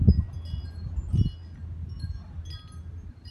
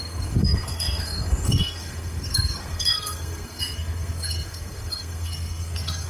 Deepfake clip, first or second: second